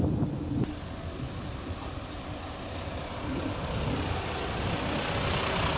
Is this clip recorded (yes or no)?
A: yes